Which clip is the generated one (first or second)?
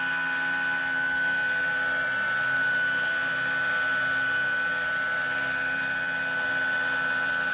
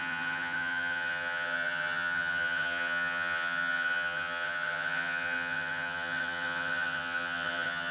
second